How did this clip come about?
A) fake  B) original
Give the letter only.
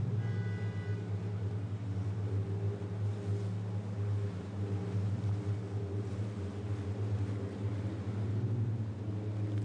B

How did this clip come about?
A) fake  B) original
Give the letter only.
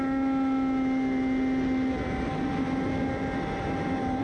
B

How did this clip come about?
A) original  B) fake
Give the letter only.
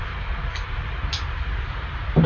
A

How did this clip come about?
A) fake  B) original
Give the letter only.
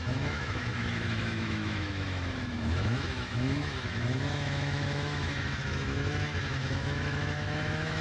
A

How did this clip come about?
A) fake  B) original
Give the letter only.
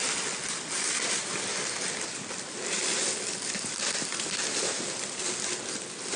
B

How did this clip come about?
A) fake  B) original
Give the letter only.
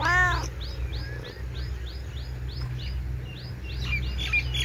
B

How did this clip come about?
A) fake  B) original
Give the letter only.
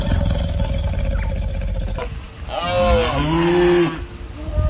B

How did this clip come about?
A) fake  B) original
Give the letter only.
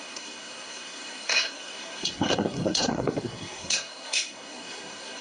A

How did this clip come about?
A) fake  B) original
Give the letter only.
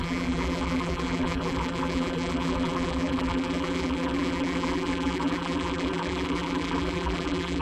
A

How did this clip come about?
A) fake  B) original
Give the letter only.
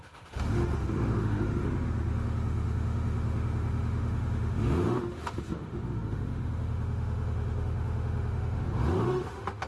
A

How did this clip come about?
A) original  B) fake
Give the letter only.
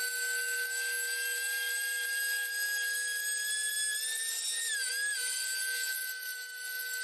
A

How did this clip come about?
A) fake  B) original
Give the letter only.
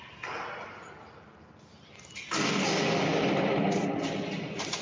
B